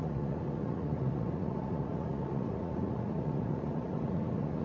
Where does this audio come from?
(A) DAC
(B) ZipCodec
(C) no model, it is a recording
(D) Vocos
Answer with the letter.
D